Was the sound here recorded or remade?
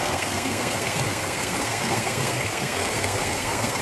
remade